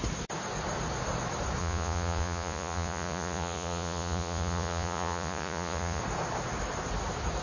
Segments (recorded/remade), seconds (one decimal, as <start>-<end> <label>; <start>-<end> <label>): 0.0-1.6 recorded; 1.6-6.0 remade; 6.0-7.4 recorded